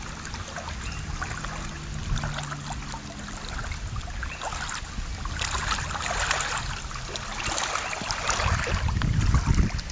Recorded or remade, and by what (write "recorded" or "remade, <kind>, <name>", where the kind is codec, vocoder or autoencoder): recorded